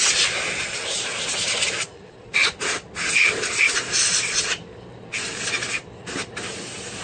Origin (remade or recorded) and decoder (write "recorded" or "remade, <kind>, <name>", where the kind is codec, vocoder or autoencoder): recorded